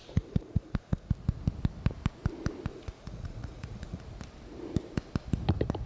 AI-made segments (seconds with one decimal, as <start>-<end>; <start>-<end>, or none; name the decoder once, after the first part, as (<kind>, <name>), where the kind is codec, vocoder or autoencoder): 0.0-1.1 (vocoder, Vocos); 2.7-4.0